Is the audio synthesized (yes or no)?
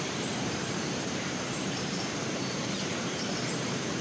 yes